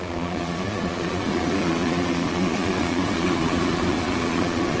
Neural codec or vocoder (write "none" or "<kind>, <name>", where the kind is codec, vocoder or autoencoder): vocoder, Vocos